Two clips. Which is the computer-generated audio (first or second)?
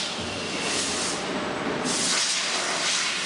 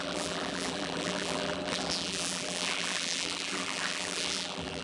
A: second